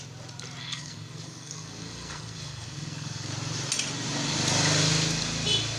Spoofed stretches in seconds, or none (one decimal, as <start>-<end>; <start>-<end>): 0.6-3.3